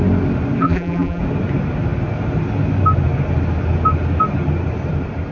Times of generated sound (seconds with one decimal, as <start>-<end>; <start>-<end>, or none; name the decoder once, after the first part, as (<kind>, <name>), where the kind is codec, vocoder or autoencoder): 0.6-1.2 (vocoder, BigVGAN v2)